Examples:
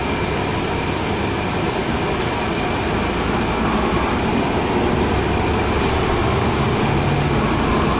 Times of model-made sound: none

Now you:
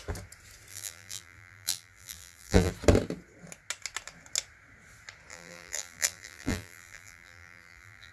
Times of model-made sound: 0.7-2.7 (vocoder, BigVGAN v2); 5.3-8.1

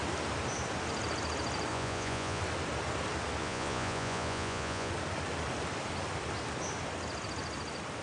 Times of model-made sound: 1.7-2.4 (vocoder, Vocos); 3.4-4.9

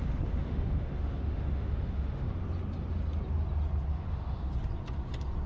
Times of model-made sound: 0.0-2.3 (autoencoder, DAC-VAE); 3.9-4.5